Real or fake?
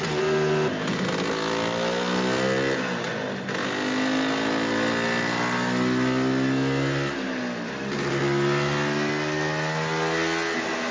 real